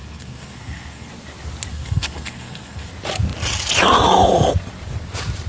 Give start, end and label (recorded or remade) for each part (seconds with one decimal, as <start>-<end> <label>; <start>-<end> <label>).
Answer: 0.0-1.1 remade; 1.1-1.7 recorded; 1.7-2.9 remade; 2.9-5.5 recorded